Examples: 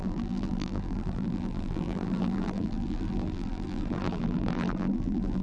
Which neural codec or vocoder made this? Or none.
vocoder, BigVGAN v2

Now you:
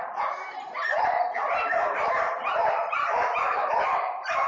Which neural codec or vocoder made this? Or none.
vocoder, BigVGAN v2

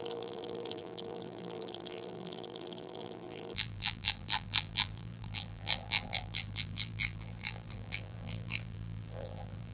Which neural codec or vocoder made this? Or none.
vocoder, BigVGAN v2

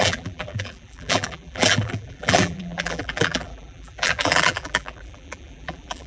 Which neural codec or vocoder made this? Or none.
vocoder, BigVGAN v2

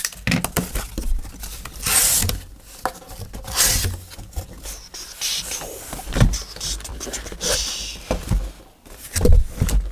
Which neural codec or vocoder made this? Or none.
none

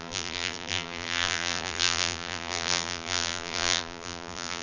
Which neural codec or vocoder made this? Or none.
vocoder, BigVGAN v2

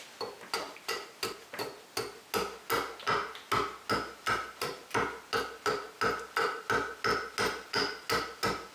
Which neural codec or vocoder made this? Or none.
none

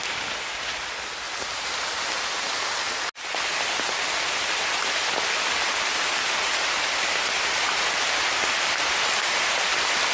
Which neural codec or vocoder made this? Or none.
none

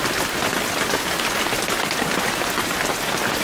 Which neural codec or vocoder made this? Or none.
vocoder, BigVGAN v2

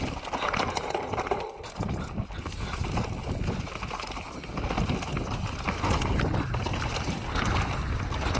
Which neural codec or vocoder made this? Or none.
none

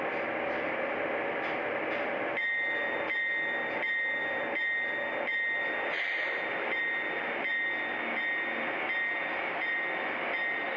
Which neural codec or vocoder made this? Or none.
none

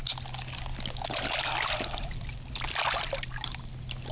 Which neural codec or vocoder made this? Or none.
none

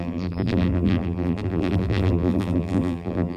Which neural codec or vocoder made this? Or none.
vocoder, BigVGAN v2